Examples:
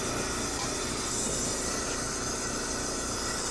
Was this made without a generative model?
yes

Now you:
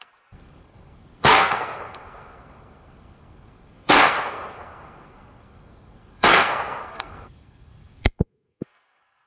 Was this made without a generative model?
no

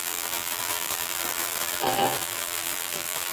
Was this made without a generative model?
no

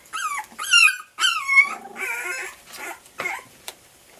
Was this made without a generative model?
no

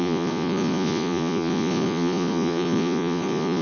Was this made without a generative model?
no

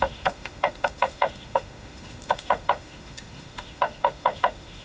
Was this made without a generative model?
no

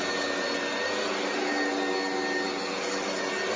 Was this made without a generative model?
yes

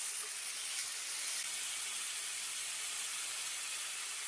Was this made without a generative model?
yes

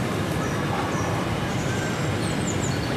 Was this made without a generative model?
yes